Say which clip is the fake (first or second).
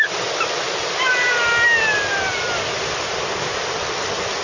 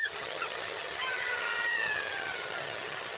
second